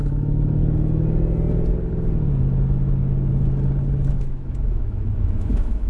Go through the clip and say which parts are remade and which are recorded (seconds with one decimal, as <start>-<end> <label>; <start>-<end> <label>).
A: 0.0-0.6 remade; 0.6-4.1 recorded; 4.1-5.9 remade